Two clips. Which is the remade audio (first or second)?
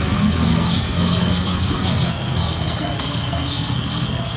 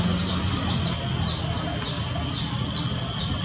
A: first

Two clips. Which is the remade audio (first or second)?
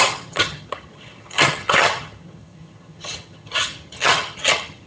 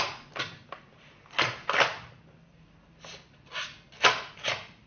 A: first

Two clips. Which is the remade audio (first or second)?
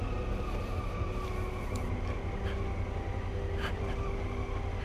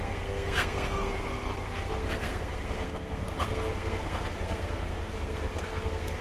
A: second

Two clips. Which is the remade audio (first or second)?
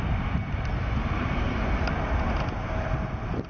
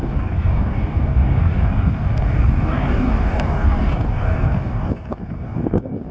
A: second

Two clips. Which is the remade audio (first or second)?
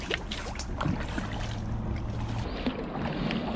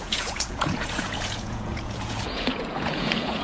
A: second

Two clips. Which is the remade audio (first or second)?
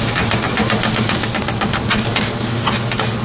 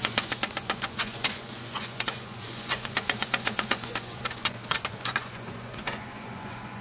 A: second